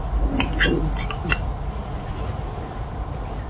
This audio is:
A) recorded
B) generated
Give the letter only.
A